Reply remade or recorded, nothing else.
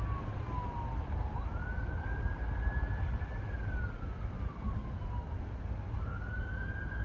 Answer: recorded